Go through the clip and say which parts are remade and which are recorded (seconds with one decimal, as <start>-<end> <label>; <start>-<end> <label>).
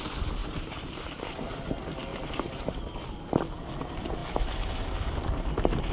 0.0-0.4 recorded; 0.4-1.2 remade; 1.2-5.9 recorded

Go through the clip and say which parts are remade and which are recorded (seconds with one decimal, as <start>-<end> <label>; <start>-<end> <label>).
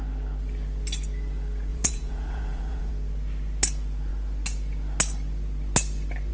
0.0-1.7 recorded; 1.7-2.9 remade; 2.9-6.3 recorded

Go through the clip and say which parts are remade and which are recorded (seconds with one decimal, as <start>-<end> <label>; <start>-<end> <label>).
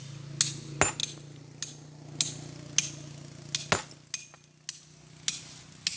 0.0-6.0 recorded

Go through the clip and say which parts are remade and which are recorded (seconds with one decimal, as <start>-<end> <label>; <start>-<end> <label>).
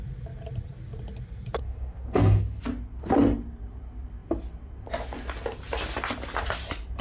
0.0-1.6 recorded; 1.6-2.6 remade; 2.6-7.0 recorded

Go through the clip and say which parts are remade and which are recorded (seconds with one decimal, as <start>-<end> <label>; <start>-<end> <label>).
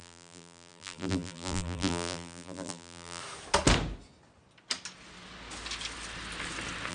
0.0-3.2 remade; 3.2-6.9 recorded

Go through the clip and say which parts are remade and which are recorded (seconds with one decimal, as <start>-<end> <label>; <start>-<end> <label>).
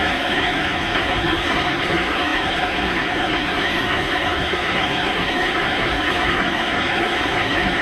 0.0-7.8 remade